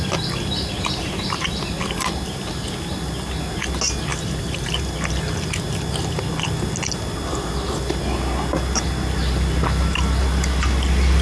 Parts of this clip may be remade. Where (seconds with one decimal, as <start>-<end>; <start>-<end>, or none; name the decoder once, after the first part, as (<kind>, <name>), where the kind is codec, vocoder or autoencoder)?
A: 1.0-1.6 (vocoder, BigVGAN v2); 4.1-4.7